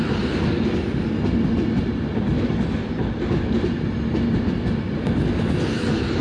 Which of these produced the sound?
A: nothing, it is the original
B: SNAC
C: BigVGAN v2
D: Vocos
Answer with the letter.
A